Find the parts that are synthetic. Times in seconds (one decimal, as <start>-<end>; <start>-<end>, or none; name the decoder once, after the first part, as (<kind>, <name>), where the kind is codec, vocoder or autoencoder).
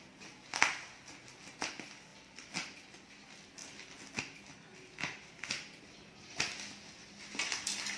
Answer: 2.1-3.1 (vocoder, BigVGAN v2)